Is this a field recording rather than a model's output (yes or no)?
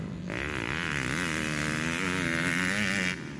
yes